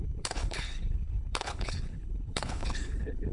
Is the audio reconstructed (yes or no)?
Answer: yes